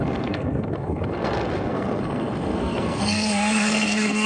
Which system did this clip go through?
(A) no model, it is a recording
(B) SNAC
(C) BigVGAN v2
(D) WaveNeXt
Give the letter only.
B